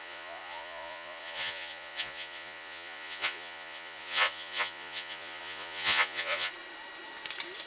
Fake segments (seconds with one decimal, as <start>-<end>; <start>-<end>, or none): 0.0-6.5